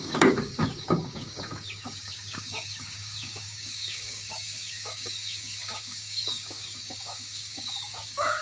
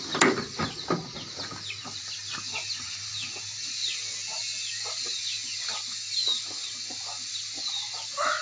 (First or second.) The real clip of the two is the second